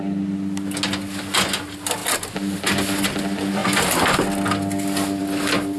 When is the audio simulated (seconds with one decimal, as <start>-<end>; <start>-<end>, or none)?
none